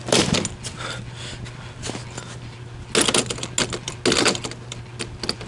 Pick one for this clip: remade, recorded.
recorded